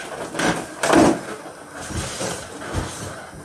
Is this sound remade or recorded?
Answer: recorded